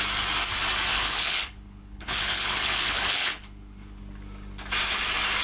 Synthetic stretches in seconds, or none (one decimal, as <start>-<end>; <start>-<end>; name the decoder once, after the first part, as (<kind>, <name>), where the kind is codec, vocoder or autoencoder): 0.9-4.0 (codec, HILCodec)